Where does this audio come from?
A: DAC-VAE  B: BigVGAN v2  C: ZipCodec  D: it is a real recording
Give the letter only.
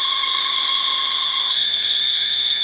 A